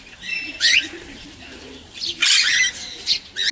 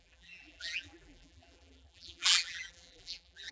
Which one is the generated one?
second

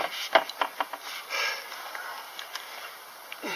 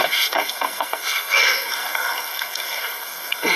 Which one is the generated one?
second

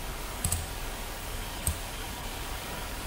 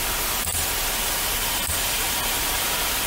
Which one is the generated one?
first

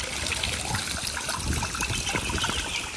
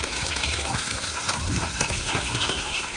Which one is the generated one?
second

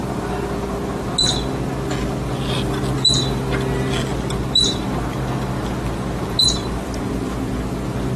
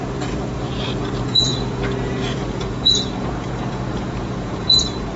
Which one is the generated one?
second